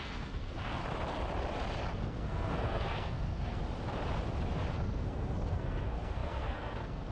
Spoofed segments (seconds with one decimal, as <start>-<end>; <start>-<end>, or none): 0.0-0.8; 1.9-3.6; 4.7-7.1